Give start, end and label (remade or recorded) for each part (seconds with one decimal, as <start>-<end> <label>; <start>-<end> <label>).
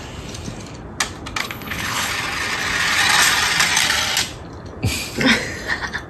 0.0-1.4 recorded; 1.4-2.1 remade; 2.1-6.1 recorded